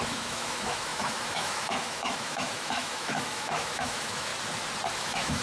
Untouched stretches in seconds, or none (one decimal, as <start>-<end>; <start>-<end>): 4.3-4.9